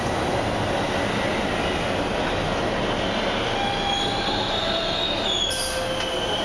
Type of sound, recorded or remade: recorded